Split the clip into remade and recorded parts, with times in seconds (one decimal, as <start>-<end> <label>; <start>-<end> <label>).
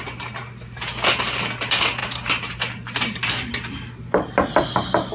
0.0-5.1 recorded